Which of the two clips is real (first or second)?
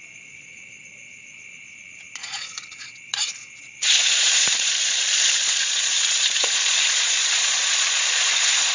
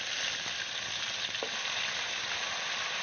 second